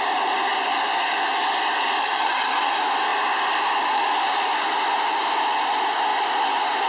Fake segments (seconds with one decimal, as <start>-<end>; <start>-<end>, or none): 2.0-2.7